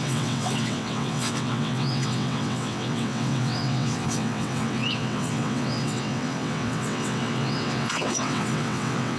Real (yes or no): no